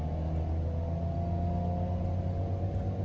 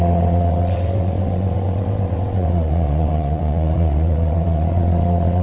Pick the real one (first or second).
first